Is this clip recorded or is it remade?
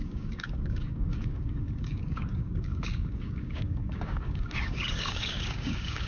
remade